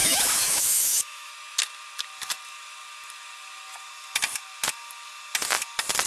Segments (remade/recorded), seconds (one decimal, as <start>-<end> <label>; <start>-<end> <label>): 0.0-1.3 remade; 1.3-6.1 recorded